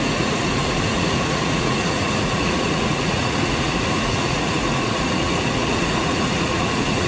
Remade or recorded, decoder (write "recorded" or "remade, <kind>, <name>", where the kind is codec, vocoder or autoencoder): remade, vocoder, Vocos